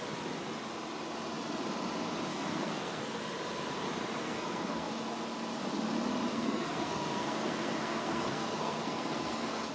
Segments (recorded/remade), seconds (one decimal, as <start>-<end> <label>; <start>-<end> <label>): 0.0-2.3 recorded; 2.3-3.2 remade; 3.2-4.2 recorded; 4.2-4.9 remade; 4.9-6.3 recorded; 6.3-9.7 remade